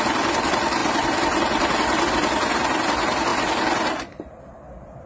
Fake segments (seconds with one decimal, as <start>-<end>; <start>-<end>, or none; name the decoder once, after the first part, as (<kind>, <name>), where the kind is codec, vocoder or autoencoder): none